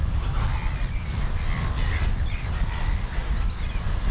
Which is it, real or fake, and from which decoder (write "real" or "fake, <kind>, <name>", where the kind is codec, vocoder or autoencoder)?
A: real